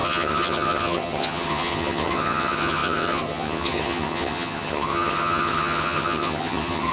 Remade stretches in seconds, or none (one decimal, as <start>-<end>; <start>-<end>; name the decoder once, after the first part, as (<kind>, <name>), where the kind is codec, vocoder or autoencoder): 0.0-6.9 (vocoder, HiFi-GAN)